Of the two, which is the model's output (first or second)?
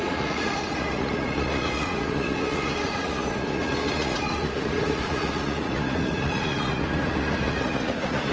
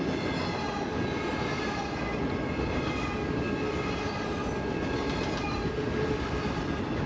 first